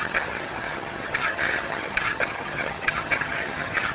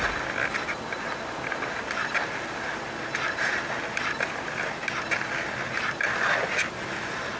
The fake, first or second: first